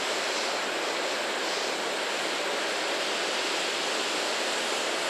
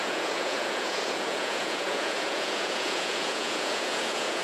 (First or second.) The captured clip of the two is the first